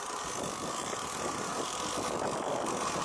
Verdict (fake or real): real